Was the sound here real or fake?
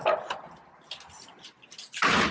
real